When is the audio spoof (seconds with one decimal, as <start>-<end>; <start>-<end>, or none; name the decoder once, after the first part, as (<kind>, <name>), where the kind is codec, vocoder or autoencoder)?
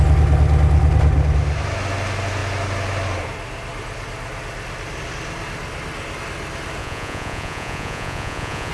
6.8-8.7 (vocoder, Vocos)